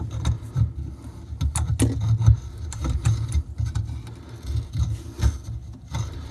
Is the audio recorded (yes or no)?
yes